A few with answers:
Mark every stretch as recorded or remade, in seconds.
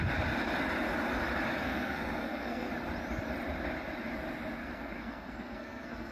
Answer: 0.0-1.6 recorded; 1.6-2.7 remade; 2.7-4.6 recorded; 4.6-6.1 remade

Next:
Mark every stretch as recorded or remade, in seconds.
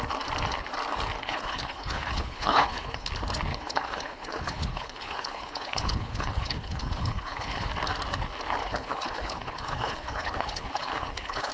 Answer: 0.0-1.2 recorded; 1.2-3.1 remade; 3.1-3.5 recorded; 3.5-7.7 remade; 7.7-8.6 recorded; 8.6-11.5 remade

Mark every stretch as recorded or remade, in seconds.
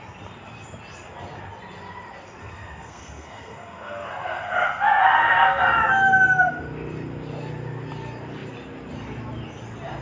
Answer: 0.0-2.4 recorded; 2.4-5.6 remade; 5.6-10.0 recorded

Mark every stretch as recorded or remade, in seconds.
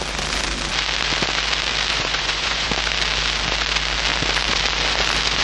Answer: 0.0-1.9 recorded; 1.9-2.7 remade; 2.7-5.4 recorded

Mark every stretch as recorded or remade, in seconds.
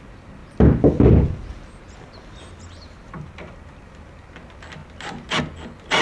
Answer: 0.0-6.0 recorded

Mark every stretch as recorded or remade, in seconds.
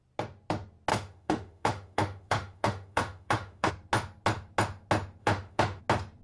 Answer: 0.0-0.9 recorded; 0.9-3.7 remade; 3.7-5.2 recorded; 5.2-5.8 remade; 5.8-6.2 recorded